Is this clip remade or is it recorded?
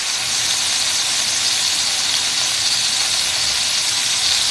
recorded